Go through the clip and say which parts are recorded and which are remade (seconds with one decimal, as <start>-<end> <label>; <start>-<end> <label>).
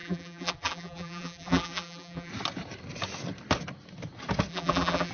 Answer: 0.0-2.3 remade; 2.3-4.5 recorded; 4.5-5.1 remade